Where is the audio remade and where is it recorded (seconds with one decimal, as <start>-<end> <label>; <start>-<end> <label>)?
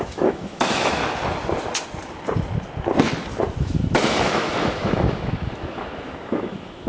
0.0-1.0 remade; 1.0-3.6 recorded; 3.6-6.9 remade